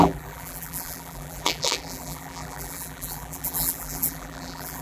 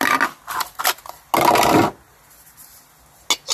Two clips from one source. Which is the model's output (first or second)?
first